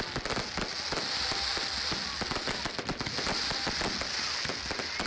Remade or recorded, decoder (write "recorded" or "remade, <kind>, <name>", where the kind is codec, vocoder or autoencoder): recorded